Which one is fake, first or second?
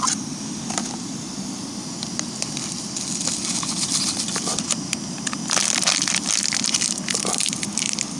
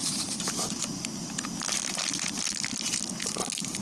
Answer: second